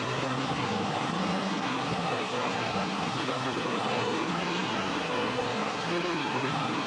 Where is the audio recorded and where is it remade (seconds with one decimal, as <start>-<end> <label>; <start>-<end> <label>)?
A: 0.0-6.9 remade